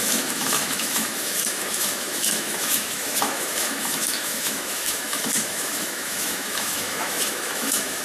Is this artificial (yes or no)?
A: yes